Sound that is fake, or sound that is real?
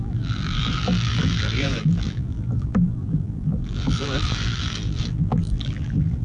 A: fake